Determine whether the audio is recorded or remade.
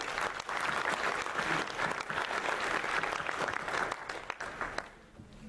recorded